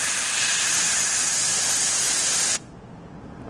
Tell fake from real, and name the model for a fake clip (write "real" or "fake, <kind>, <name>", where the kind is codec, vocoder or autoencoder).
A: real